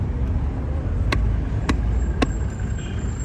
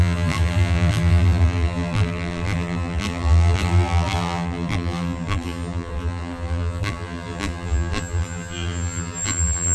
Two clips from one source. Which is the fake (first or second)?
second